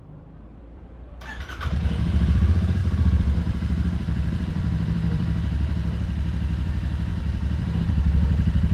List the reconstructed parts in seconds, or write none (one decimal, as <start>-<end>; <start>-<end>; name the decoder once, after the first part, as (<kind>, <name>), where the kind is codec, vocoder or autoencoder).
0.0-8.7 (vocoder, BigVGAN v2)